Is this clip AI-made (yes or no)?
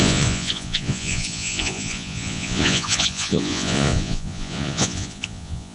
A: yes